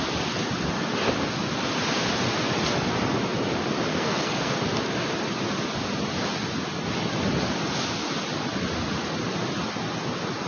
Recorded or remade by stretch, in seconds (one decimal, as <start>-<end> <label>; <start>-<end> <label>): 0.0-3.9 recorded; 3.9-4.6 remade; 4.6-10.5 recorded